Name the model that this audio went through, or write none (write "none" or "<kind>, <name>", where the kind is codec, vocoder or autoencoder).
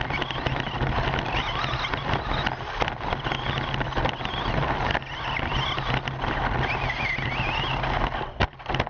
none